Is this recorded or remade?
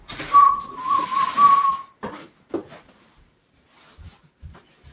remade